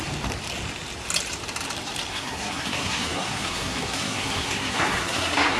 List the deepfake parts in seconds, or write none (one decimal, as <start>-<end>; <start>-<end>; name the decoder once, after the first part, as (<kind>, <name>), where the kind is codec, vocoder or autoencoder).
2.1-5.6 (codec, SNAC)